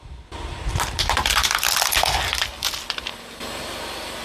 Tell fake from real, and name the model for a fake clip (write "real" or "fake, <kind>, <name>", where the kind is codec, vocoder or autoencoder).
real